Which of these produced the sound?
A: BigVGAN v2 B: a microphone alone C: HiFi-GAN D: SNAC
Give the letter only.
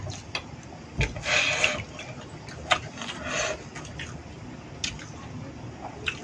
B